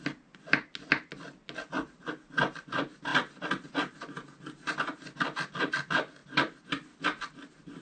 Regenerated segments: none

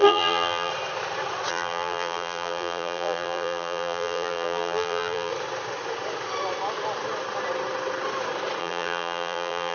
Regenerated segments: 0.0-0.7; 1.5-5.3; 8.6-9.7

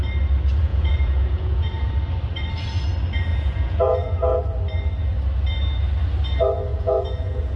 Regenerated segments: 0.7-1.9; 3.3-4.4; 6.7-7.6

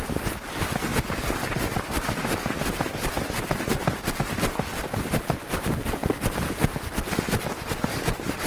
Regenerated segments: none

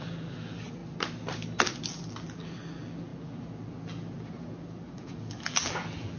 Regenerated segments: 0.0-0.8; 1.9-6.2

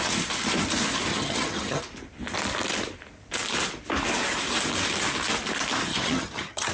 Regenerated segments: 1.1-1.8; 5.9-6.7